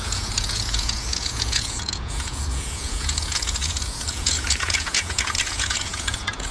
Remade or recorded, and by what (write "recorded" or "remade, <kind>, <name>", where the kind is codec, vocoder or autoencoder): remade, vocoder, Vocos